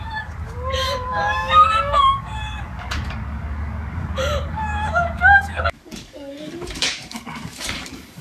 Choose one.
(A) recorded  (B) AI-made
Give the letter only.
B